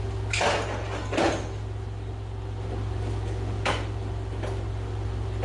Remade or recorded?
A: recorded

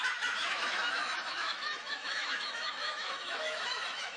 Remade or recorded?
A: remade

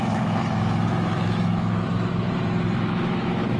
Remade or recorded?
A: remade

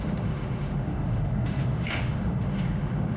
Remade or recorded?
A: remade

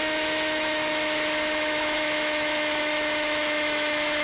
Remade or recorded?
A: remade